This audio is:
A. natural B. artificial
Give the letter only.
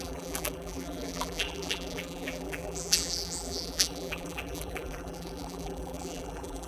B